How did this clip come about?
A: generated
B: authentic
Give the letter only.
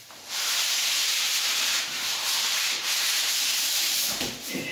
A